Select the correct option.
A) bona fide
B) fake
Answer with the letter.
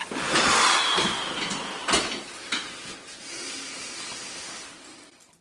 A